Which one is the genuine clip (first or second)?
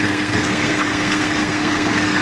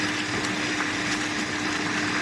second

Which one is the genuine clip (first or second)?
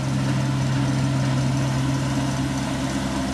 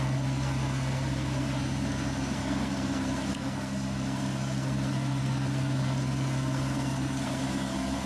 first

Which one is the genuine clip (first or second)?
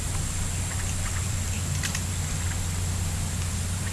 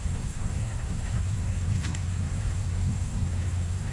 first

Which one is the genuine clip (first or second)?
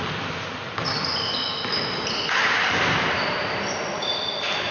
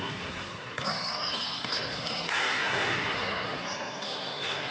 first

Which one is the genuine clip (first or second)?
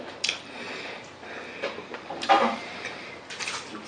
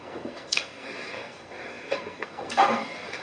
first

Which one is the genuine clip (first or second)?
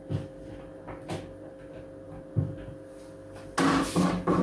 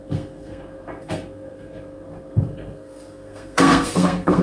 first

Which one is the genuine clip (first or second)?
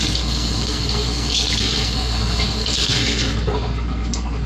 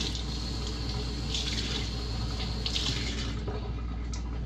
second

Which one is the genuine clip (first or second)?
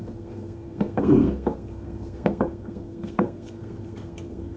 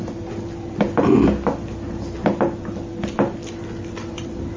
second